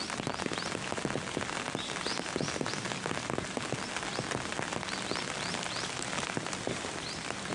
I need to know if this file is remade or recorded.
recorded